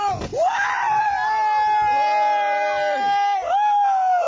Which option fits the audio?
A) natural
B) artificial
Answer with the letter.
A